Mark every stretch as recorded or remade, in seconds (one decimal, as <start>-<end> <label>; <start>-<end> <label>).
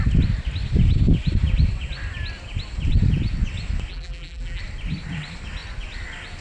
0.0-3.9 recorded; 3.9-4.6 remade; 4.6-6.4 recorded